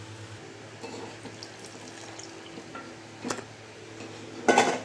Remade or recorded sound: recorded